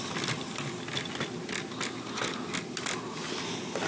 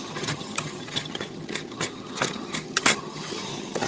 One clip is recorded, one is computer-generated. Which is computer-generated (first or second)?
second